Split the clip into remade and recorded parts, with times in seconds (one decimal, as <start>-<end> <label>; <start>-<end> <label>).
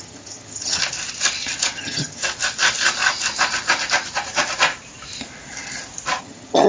0.0-0.8 remade; 0.8-1.8 recorded; 1.8-2.2 remade; 2.2-6.2 recorded; 6.2-6.7 remade